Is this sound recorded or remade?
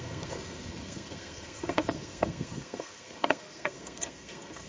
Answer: remade